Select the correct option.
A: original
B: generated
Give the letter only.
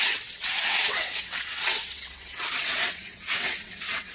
B